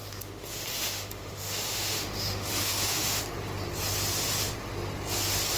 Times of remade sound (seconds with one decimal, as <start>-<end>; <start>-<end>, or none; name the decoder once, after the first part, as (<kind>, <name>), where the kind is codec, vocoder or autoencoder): 0.0-3.2 (autoencoder, DAC-VAE)